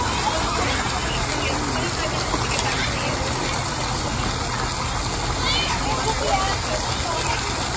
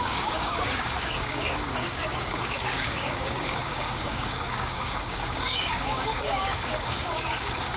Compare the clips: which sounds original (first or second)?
first